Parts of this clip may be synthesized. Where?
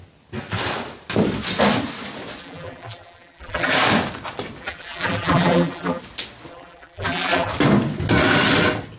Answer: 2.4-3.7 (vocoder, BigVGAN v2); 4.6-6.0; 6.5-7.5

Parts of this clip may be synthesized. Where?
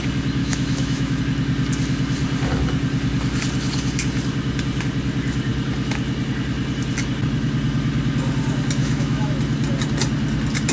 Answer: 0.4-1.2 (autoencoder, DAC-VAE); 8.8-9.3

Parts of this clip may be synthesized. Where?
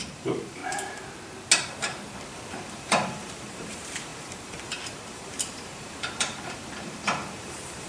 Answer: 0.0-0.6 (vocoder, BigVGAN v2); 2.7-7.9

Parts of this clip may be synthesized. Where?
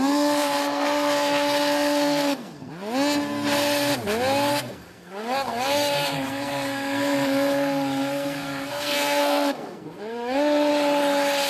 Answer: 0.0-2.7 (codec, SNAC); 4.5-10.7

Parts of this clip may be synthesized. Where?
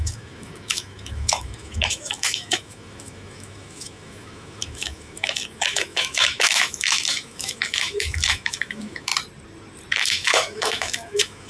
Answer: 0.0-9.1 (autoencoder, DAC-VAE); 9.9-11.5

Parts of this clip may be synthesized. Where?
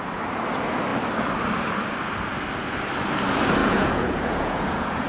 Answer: 3.6-5.1 (vocoder, Vocos)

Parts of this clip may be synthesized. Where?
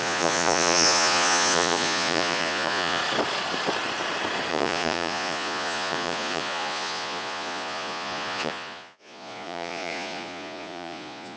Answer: 0.0-3.0 (vocoder, Vocos); 4.5-11.4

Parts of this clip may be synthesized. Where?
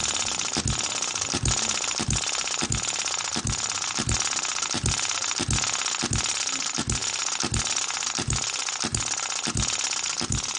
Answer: none